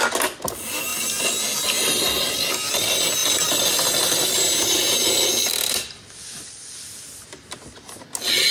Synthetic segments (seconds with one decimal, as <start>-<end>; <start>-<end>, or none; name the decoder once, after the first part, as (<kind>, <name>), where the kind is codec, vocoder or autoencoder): none